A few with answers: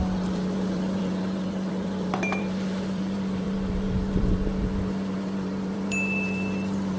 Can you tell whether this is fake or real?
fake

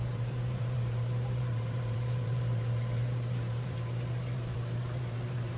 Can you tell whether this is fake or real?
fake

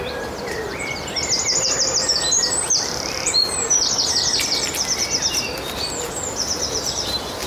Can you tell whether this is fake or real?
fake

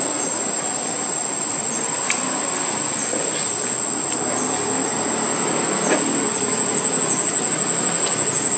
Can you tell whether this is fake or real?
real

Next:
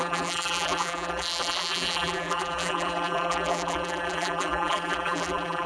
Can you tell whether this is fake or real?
fake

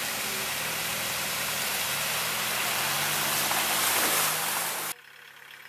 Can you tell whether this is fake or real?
real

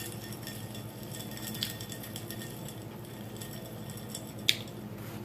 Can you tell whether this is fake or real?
real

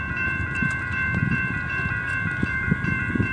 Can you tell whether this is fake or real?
fake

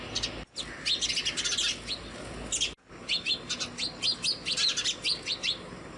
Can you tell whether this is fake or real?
real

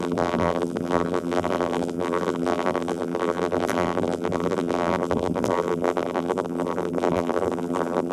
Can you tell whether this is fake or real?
fake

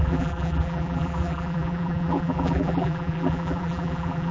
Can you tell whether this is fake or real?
fake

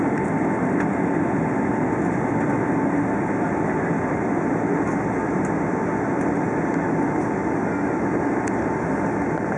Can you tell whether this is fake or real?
real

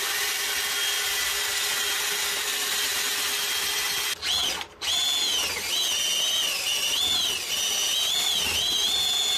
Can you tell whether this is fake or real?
real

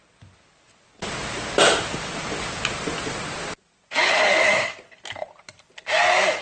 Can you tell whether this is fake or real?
real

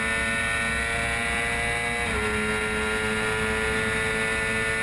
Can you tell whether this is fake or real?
real